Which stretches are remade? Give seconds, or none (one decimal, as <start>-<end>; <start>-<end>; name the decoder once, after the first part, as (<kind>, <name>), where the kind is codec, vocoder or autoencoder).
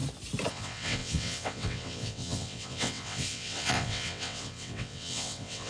0.5-5.7 (vocoder, WaveNeXt)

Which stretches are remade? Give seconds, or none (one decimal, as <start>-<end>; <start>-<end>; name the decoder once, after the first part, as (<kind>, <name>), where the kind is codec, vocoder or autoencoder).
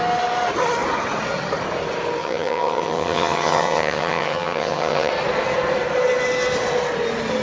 2.2-5.1 (vocoder, HiFi-GAN)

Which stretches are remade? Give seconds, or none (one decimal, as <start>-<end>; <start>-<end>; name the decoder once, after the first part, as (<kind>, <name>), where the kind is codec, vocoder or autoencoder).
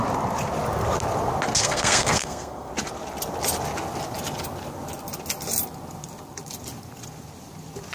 1.6-2.7 (codec, SNAC)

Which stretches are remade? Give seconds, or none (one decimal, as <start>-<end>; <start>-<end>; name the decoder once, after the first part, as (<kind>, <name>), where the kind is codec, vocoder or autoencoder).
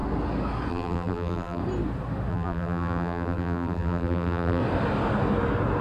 0.7-1.6 (vocoder, BigVGAN v2); 2.3-4.6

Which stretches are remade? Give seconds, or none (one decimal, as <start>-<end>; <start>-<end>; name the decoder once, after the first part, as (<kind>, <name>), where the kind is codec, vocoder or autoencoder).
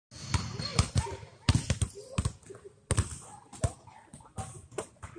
none